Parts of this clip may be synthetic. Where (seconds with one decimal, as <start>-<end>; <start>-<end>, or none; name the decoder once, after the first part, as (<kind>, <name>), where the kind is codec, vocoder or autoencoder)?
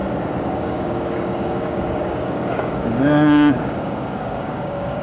0.5-5.0 (codec, DAC)